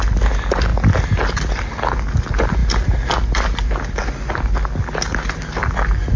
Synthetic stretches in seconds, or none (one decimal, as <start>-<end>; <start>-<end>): none